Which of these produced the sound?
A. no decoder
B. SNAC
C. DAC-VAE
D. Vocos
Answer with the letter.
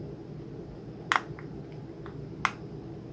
A